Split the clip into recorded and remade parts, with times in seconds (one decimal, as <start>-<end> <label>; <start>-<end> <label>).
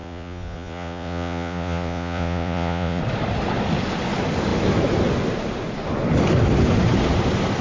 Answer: 0.0-3.0 remade; 3.0-7.6 recorded